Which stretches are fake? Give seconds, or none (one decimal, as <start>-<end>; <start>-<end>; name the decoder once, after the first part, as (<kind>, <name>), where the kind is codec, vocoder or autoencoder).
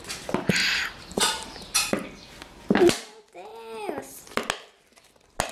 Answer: none